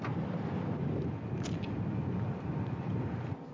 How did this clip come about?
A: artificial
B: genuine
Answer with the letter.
B